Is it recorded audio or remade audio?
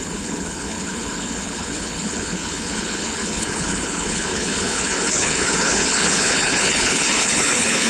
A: remade